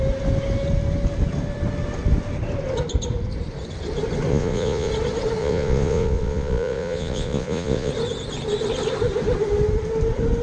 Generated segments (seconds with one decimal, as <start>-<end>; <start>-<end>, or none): 4.3-4.9; 5.4-7.9